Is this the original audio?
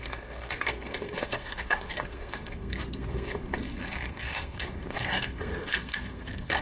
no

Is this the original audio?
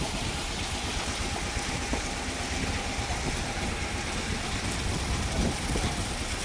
yes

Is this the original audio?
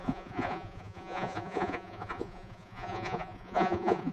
no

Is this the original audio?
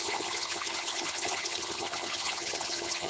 no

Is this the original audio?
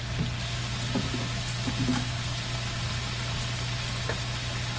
yes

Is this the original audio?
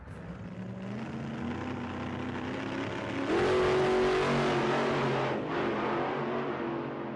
yes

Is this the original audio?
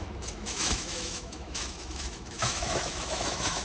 no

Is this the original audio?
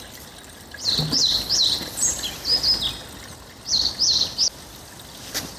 yes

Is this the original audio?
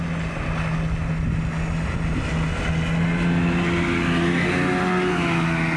yes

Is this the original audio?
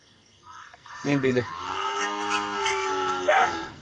no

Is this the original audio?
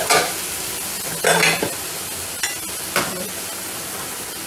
yes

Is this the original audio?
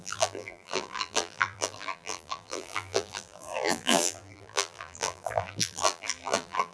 no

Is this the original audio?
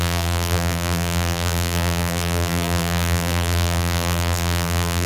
no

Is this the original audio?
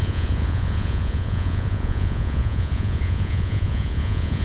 no